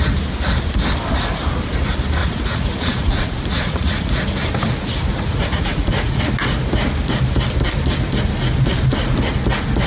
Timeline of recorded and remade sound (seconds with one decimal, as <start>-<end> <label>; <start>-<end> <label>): 0.0-2.2 recorded; 2.2-4.0 remade; 4.0-5.1 recorded; 5.1-6.2 remade; 6.2-9.9 recorded